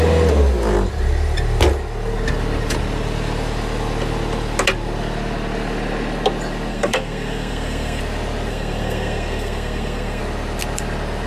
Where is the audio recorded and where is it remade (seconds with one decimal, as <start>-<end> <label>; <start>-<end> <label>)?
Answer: 0.0-6.7 recorded; 6.7-8.0 remade; 8.0-8.5 recorded; 8.5-10.2 remade; 10.2-11.3 recorded